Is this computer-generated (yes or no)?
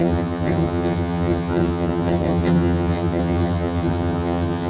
yes